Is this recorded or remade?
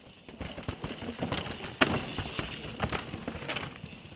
recorded